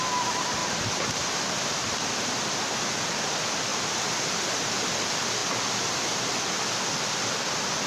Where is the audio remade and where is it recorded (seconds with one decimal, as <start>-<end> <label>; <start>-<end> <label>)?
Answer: 0.0-0.6 recorded; 0.6-1.4 remade; 1.4-3.7 recorded; 3.7-4.9 remade; 4.9-7.9 recorded

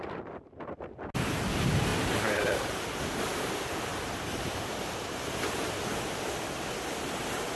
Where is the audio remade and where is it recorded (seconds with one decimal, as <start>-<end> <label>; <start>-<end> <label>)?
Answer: 0.0-1.9 recorded; 1.9-3.0 remade; 3.0-3.9 recorded; 3.9-5.3 remade; 5.3-7.6 recorded

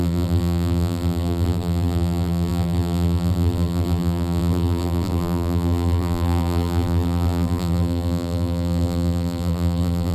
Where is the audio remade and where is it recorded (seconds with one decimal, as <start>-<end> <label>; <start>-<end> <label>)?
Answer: 0.0-10.1 remade

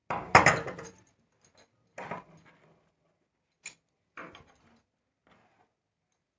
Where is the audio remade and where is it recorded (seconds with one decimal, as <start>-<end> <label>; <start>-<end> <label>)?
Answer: 0.0-6.4 recorded

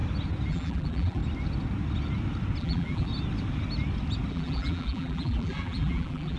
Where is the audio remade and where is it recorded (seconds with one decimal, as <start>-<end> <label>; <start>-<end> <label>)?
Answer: 0.0-0.5 recorded; 0.5-1.2 remade; 1.2-2.6 recorded; 2.6-3.1 remade; 3.1-4.3 recorded; 4.3-6.4 remade